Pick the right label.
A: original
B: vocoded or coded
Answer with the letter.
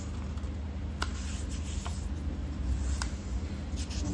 A